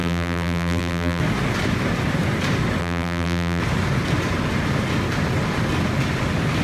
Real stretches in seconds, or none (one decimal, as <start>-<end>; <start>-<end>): 1.2-2.8; 3.6-6.6